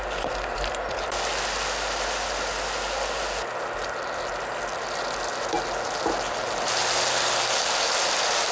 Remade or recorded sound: recorded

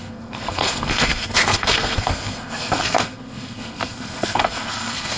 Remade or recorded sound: remade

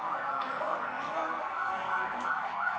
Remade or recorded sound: remade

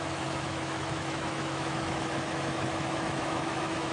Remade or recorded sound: remade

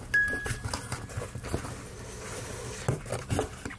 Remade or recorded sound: recorded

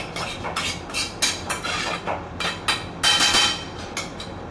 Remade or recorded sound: recorded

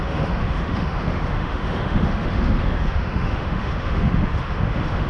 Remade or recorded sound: remade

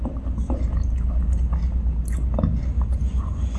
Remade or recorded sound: recorded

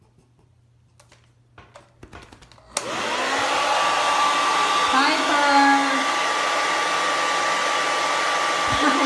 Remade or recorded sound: recorded